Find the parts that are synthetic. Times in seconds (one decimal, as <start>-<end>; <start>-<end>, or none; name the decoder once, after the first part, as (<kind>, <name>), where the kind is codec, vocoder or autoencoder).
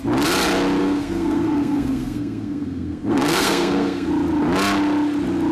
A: 0.8-4.1 (codec, SNAC)